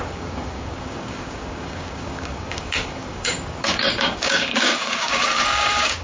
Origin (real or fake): fake